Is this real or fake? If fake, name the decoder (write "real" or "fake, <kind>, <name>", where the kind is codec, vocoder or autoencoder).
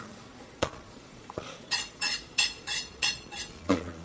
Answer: fake, vocoder, Vocos